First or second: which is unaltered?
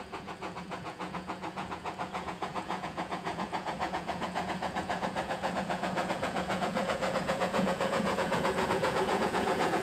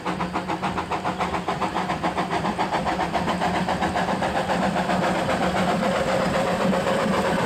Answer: second